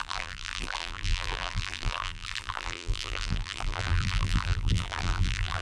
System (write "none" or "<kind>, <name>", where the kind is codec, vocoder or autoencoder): vocoder, BigVGAN v2